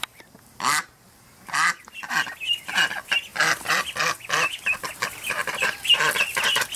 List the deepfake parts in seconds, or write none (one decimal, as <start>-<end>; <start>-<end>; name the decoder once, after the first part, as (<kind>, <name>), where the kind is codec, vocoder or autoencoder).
3.3-5.0 (vocoder, BigVGAN v2); 5.4-6.2